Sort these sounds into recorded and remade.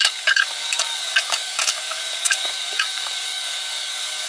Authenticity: remade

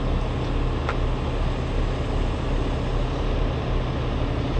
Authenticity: recorded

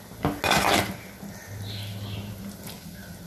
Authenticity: recorded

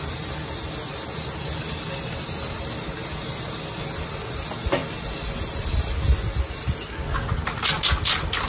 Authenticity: recorded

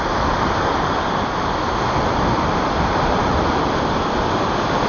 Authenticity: recorded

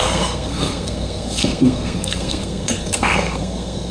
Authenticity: remade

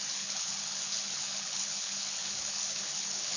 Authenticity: remade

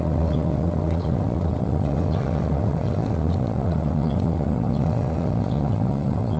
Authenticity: remade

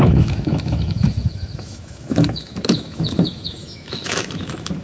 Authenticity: remade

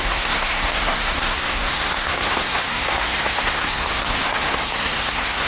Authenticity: remade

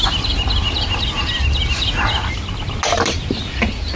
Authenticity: recorded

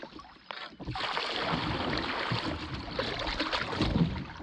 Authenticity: recorded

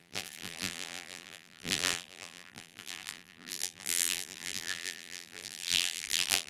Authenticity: remade